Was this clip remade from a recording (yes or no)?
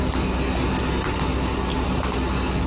no